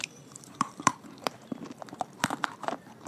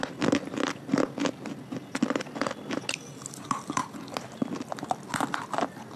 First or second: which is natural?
second